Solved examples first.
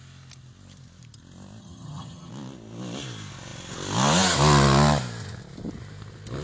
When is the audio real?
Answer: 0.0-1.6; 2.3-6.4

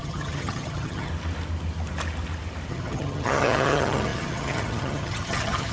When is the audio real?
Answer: 1.1-2.7

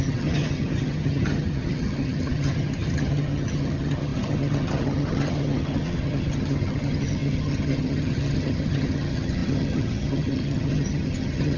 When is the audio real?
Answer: none